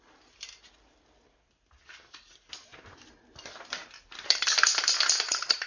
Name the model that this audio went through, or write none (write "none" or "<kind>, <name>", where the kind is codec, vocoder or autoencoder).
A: none